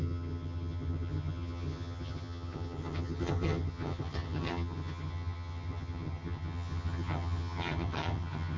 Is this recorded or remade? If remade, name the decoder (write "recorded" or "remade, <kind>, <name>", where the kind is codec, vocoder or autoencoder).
remade, vocoder, HiFi-GAN